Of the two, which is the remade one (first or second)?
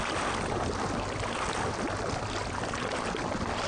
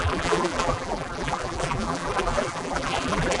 second